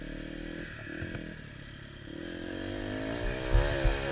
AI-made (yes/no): no